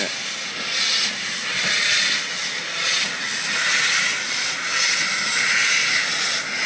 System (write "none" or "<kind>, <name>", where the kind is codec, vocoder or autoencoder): none